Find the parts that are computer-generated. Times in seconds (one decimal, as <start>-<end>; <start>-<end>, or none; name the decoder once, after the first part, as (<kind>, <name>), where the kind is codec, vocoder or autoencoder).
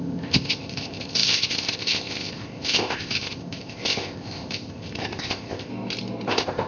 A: 0.0-5.7 (codec, ZipCodec); 6.3-6.7